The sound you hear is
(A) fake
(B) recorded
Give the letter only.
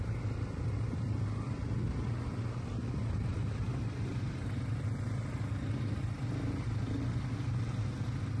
B